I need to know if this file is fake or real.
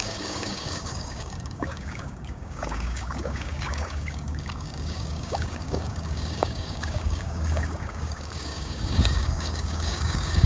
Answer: fake